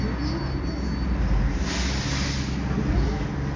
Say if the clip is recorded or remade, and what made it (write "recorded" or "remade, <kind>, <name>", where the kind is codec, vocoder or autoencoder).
recorded